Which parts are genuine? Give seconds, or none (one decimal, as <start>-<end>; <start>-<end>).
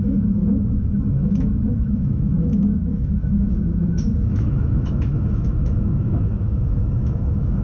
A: none